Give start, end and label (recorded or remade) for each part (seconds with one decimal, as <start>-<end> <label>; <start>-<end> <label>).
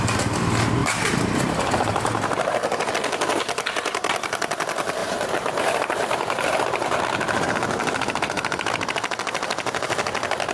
0.0-0.8 recorded; 0.8-2.9 remade; 2.9-5.0 recorded; 5.0-7.0 remade; 7.0-10.5 recorded